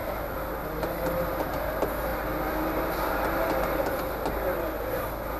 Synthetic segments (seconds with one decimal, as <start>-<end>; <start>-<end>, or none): none